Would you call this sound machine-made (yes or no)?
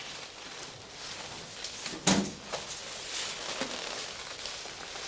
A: no